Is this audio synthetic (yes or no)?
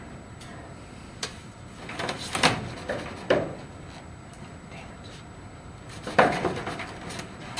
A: no